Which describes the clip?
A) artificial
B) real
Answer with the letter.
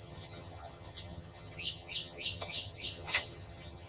A